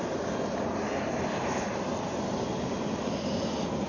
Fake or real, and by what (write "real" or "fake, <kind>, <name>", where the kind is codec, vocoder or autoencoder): real